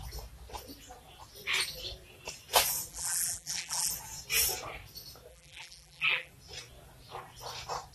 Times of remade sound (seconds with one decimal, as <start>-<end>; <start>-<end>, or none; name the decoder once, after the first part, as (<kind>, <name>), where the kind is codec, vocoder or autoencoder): 2.9-3.9 (vocoder, BigVGAN v2); 5.3-6.3